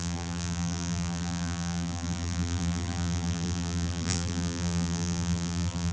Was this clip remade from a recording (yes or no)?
yes